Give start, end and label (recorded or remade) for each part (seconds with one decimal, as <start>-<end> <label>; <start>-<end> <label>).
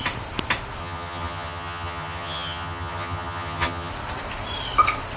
0.0-0.8 recorded; 0.8-3.9 remade; 3.9-5.2 recorded